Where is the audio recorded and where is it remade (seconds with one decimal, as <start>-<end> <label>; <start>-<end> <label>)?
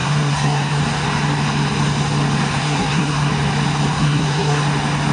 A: 0.0-0.8 remade; 0.8-2.6 recorded; 2.6-3.3 remade; 3.3-3.9 recorded; 3.9-4.6 remade; 4.6-5.1 recorded